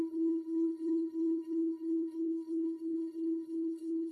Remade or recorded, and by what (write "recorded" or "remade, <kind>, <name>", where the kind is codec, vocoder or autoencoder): remade, codec, HILCodec